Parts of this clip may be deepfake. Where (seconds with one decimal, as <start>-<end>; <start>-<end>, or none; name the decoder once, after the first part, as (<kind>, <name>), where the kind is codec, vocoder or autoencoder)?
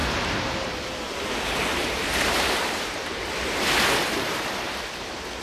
0.0-3.2 (vocoder, BigVGAN v2)